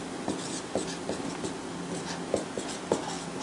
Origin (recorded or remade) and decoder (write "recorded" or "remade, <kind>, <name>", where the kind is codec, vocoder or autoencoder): recorded